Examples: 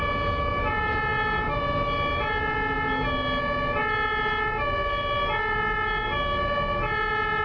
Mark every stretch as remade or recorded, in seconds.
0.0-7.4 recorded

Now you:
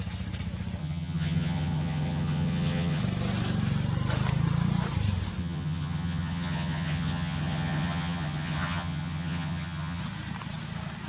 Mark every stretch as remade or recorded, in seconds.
0.0-0.8 recorded; 0.8-3.0 remade; 3.0-5.4 recorded; 5.4-10.0 remade; 10.0-11.1 recorded

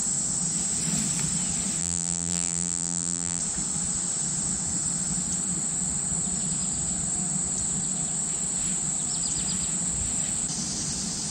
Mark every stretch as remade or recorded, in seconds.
0.0-1.8 recorded; 1.8-3.4 remade; 3.4-11.3 recorded

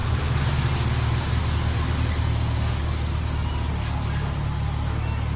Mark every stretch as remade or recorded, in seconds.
0.0-5.4 recorded

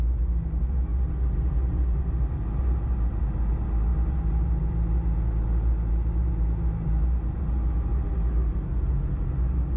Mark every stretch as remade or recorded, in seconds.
0.0-9.8 recorded

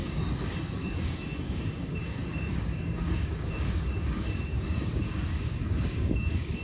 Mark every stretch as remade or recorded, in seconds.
0.0-6.6 remade

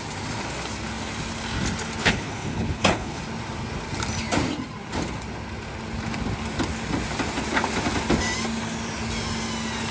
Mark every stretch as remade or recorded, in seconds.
0.0-2.0 recorded; 2.0-3.2 remade; 3.2-9.9 recorded